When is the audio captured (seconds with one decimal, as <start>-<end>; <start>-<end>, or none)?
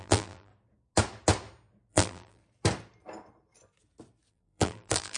0.5-1.9; 2.4-4.3